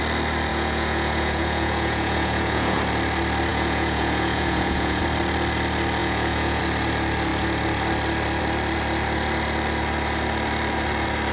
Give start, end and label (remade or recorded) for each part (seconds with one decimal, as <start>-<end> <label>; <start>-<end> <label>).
0.0-0.5 recorded; 0.5-2.8 remade; 2.8-3.5 recorded; 3.5-5.0 remade; 5.0-6.0 recorded; 6.0-6.6 remade; 6.6-11.3 recorded